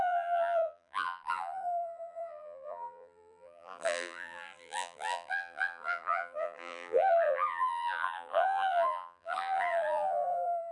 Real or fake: fake